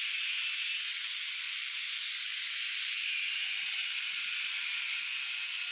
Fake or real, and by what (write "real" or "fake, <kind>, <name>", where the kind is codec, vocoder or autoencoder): real